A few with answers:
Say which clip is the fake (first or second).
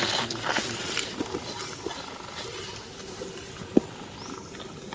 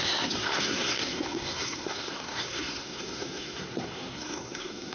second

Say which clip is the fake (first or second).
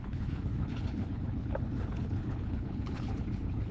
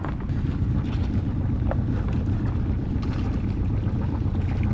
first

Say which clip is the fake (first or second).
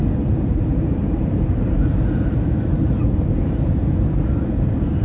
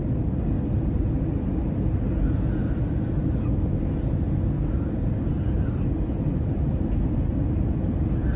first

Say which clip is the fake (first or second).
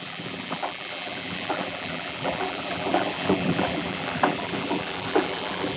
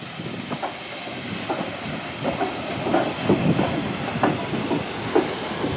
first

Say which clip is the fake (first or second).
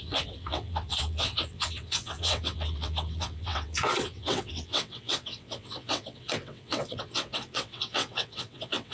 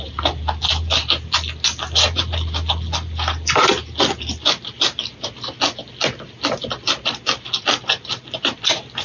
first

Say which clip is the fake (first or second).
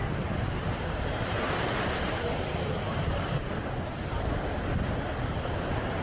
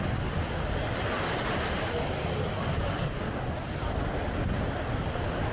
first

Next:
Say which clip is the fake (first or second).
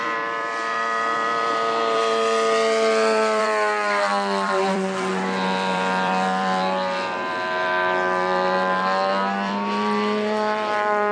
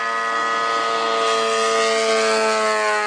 first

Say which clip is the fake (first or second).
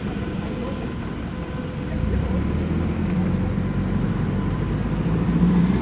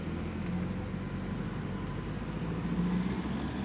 first